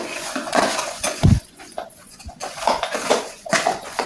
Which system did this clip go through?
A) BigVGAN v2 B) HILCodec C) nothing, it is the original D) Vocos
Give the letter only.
D